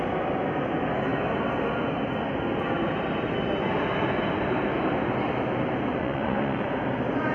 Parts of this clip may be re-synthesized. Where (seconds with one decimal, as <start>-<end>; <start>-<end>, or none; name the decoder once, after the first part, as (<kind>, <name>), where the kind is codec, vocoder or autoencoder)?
5.9-6.7 (vocoder, Vocos)